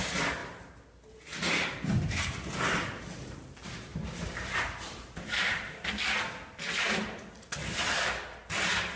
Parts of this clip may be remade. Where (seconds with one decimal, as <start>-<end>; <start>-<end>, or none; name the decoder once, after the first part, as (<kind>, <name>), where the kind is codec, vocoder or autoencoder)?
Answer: 3.9-5.9 (vocoder, BigVGAN v2)